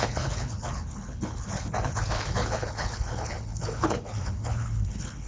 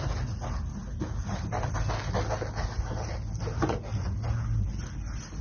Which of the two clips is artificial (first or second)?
first